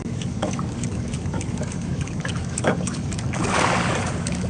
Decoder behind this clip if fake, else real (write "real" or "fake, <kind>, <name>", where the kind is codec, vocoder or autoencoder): fake, codec, DAC